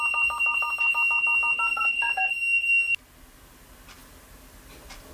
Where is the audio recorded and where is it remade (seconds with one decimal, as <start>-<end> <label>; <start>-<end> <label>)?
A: 0.0-1.7 recorded; 1.7-2.3 remade; 2.3-5.1 recorded